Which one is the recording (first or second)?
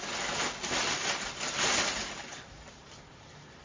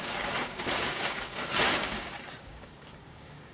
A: first